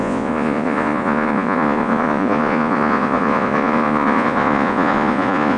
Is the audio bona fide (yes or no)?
no